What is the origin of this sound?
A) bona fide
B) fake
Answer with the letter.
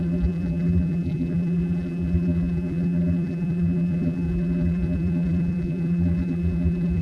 B